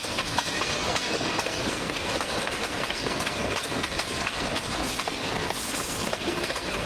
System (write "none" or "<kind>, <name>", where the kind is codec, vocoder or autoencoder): codec, SNAC